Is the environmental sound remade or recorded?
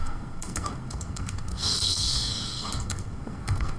remade